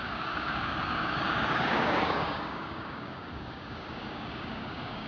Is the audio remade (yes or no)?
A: yes